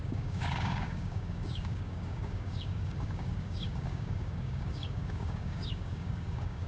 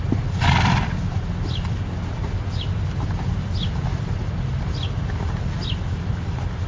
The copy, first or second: first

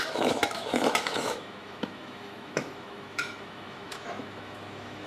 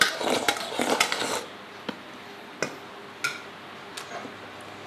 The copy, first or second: first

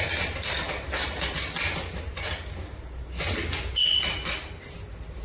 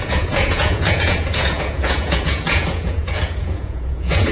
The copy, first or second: second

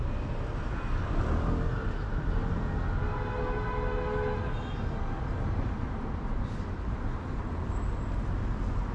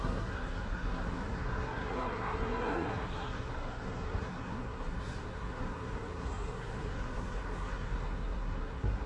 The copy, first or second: second